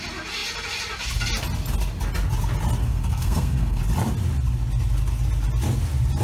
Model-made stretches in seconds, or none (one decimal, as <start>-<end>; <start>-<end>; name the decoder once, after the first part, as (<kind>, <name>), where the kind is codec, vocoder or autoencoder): 2.8-3.8 (codec, SNAC)